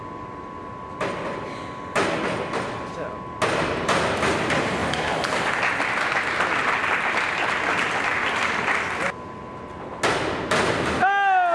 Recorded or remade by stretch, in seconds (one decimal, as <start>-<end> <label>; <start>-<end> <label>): 0.0-11.5 recorded